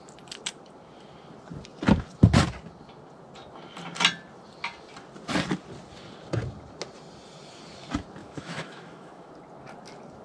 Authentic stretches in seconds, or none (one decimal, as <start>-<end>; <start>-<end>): 0.0-8.2; 9.3-10.2